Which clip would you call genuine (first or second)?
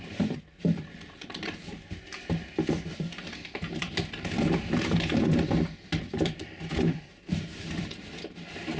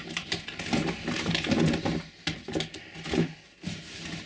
second